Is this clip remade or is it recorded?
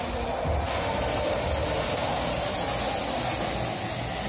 recorded